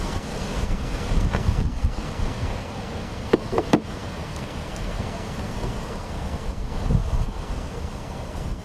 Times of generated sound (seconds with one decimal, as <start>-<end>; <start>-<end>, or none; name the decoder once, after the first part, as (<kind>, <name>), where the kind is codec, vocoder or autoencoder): 0.0-8.6 (codec, SNAC)

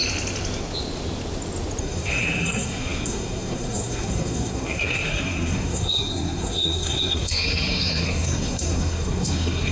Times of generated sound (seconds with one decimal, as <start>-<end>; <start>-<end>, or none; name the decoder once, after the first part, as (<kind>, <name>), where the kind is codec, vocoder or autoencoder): 1.8-9.7 (codec, SNAC)

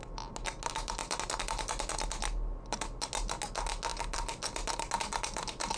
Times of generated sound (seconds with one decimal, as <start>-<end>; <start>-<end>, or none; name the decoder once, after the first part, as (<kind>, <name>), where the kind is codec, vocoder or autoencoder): none

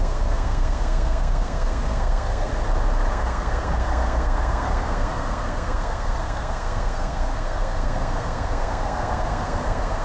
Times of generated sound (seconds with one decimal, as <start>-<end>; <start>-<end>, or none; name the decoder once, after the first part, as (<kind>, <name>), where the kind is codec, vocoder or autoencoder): 0.0-2.5 (codec, SNAC); 3.1-10.0